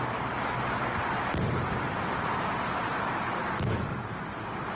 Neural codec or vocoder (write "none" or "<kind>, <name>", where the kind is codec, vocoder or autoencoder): none